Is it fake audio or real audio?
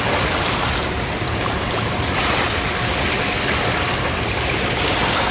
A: real